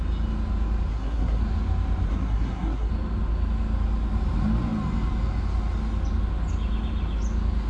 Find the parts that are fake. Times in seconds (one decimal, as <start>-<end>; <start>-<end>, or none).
0.9-1.4; 2.1-2.9